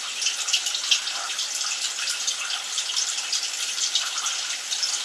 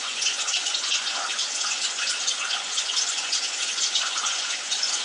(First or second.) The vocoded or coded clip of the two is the second